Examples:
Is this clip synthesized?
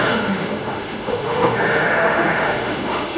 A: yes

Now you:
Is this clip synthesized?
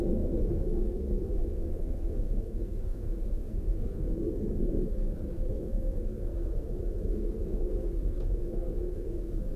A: yes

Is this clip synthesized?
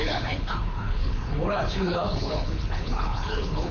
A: yes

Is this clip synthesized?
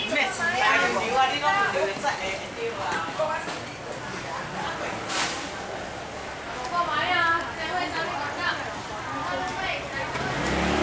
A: no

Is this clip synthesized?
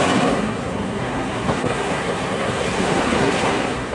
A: yes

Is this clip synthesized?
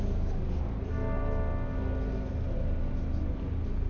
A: no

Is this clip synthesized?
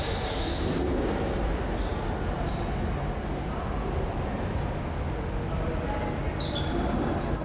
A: no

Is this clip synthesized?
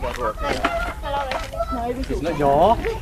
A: no